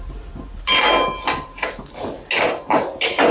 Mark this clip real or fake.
real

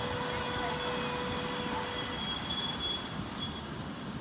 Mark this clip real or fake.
real